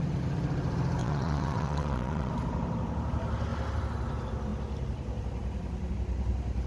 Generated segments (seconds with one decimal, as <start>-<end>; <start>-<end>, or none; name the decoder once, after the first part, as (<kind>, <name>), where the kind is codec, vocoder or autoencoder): 1.0-2.3 (vocoder, WaveNeXt)